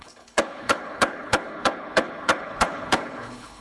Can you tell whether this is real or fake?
fake